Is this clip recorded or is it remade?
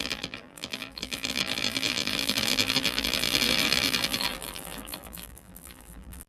remade